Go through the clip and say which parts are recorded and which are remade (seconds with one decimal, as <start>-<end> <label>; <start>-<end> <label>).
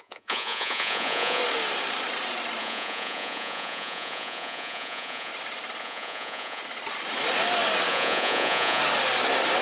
0.0-1.4 remade; 1.4-2.6 recorded; 2.6-5.3 remade; 5.3-5.8 recorded; 5.8-6.6 remade; 6.6-7.9 recorded; 7.9-8.8 remade; 8.8-9.6 recorded